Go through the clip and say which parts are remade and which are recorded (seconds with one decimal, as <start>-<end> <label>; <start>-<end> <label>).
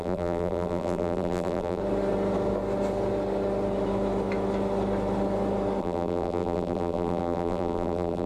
0.0-1.8 remade; 1.8-5.8 recorded; 5.8-8.3 remade